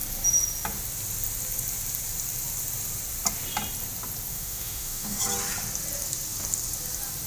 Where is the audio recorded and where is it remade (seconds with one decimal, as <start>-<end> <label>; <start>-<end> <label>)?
0.0-4.3 recorded; 4.3-5.2 remade; 5.2-7.3 recorded